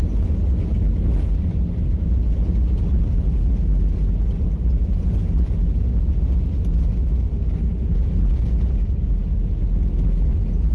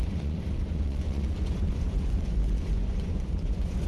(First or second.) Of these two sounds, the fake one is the second